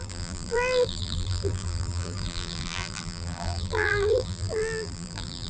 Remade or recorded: remade